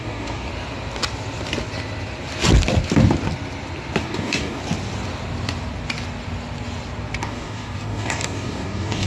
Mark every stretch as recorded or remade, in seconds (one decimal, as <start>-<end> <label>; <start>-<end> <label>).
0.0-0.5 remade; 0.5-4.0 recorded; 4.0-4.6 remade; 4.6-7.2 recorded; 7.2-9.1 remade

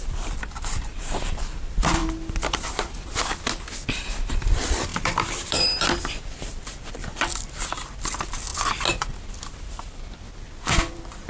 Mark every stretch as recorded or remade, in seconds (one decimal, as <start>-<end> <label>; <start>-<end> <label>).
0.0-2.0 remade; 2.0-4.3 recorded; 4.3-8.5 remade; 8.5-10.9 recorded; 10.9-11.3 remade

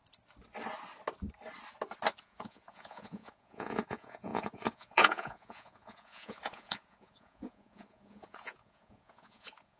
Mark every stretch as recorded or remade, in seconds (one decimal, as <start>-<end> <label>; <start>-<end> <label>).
0.0-2.2 recorded; 2.2-9.8 remade